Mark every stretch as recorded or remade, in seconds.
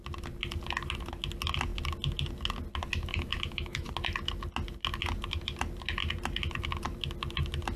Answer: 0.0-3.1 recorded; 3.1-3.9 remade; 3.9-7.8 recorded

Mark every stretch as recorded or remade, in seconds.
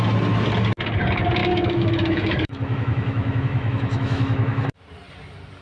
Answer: 0.0-1.4 recorded; 1.4-4.8 remade; 4.8-5.6 recorded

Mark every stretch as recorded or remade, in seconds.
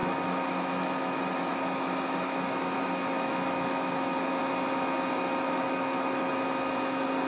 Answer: 0.0-4.4 remade; 4.4-5.3 recorded; 5.3-6.3 remade; 6.3-7.3 recorded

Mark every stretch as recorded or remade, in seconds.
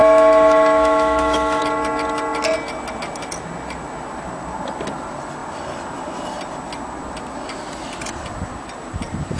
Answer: 0.0-1.6 remade; 1.6-9.4 recorded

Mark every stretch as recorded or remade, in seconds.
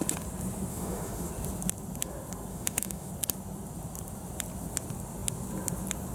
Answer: 0.0-0.7 recorded; 0.7-1.3 remade; 1.3-2.5 recorded; 2.5-3.1 remade; 3.1-6.1 recorded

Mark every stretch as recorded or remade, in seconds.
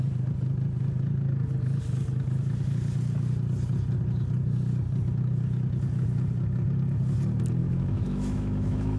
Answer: 0.0-7.6 recorded; 7.6-9.0 remade